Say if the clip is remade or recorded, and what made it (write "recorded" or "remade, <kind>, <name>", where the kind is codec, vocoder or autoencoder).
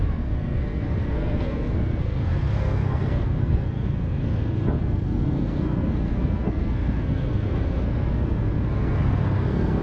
remade, codec, SNAC